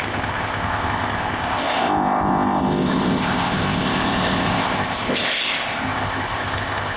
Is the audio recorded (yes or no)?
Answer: no